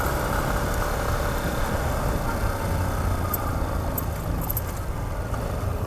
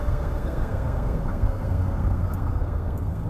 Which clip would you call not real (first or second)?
second